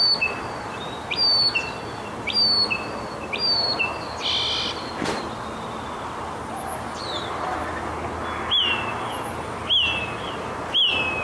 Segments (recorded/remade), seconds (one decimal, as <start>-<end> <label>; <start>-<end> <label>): 0.0-11.2 recorded